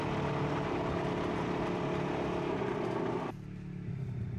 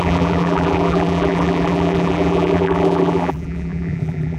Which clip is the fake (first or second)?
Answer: second